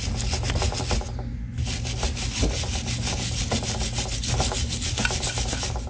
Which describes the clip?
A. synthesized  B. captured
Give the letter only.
B